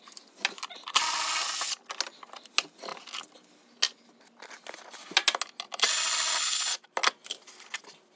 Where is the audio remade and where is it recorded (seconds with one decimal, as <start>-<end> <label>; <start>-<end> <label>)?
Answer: 0.0-8.2 recorded